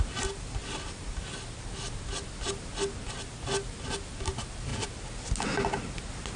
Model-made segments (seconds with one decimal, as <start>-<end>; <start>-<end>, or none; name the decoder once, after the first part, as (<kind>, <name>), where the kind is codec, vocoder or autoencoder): none